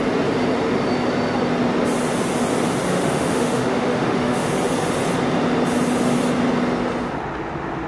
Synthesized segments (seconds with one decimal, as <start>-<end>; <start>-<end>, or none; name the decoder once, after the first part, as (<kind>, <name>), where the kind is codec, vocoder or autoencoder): 2.9-4.5 (autoencoder, DAC-VAE)